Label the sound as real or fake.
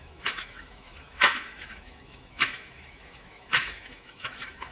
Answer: fake